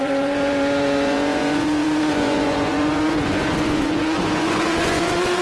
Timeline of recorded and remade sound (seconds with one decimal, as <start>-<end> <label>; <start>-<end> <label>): 0.0-5.4 remade